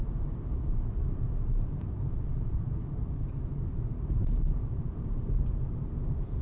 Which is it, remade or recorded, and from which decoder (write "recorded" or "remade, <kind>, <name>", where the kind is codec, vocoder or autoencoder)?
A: remade, vocoder, BigVGAN v2